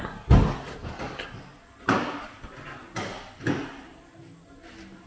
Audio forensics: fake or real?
real